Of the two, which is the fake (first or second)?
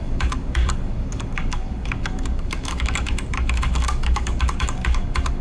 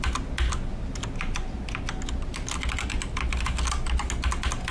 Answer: first